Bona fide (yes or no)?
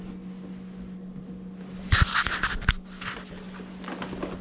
yes